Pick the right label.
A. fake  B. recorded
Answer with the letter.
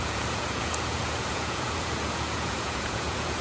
A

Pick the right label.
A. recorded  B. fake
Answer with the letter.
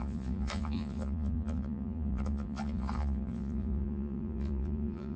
B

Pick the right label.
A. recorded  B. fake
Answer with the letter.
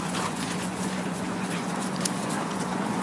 B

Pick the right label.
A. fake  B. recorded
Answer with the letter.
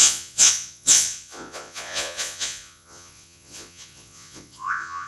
A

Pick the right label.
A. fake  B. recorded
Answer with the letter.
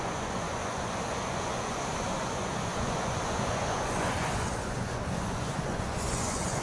A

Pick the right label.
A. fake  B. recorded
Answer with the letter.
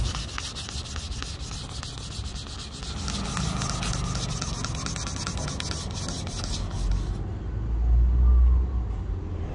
B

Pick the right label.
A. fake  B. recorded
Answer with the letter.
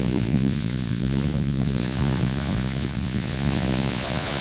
A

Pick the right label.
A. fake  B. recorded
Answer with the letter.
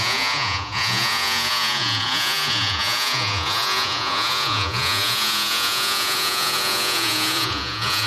A